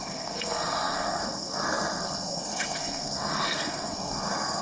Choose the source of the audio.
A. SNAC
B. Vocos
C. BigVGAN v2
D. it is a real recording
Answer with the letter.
A